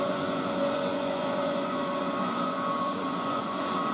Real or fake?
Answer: fake